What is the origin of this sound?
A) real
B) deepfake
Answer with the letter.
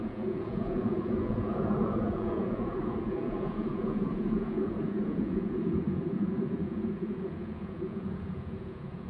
B